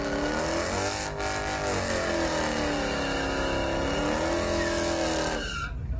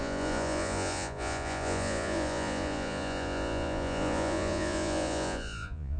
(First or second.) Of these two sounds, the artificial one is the second